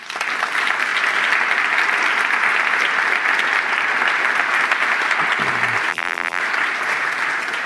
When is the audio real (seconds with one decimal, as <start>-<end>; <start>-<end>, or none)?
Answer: 0.0-5.9; 6.4-7.7